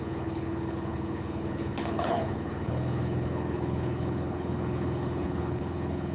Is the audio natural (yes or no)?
no